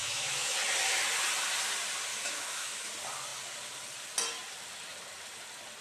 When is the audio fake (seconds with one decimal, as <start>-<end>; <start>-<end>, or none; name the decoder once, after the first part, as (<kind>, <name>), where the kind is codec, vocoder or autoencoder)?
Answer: 0.0-0.6 (autoencoder, DAC-VAE); 2.1-2.9